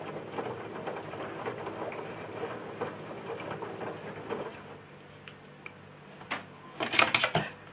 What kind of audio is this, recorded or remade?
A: recorded